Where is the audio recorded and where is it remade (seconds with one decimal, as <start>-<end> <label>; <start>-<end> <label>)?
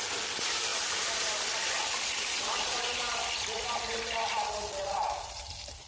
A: 0.0-5.9 recorded